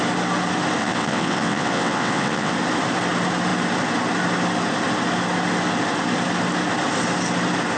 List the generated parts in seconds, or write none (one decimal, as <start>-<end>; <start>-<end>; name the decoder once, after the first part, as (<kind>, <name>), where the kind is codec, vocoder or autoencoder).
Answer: 0.8-2.5 (vocoder, WaveNeXt)